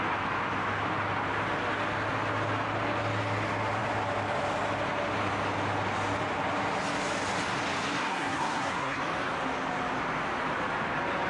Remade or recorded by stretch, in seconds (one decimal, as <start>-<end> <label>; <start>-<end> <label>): 0.0-8.0 recorded; 8.0-9.0 remade; 9.0-11.3 recorded